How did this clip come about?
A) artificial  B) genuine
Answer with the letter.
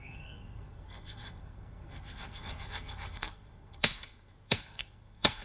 A